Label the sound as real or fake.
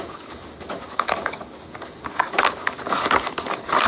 fake